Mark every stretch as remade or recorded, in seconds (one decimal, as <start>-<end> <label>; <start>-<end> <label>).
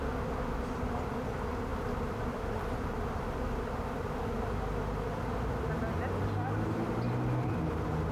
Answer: 0.0-1.7 recorded; 1.7-4.4 remade; 4.4-8.1 recorded